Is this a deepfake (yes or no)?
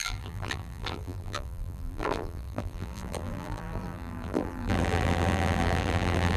yes